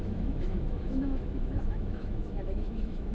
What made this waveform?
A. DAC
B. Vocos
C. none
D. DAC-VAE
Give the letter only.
D